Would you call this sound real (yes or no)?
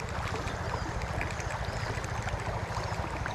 yes